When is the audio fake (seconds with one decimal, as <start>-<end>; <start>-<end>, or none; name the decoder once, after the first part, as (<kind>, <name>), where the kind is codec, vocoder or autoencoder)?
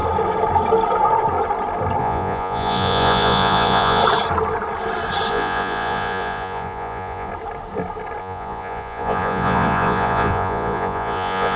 2.0-4.0 (vocoder, Vocos); 5.3-7.3; 8.2-11.6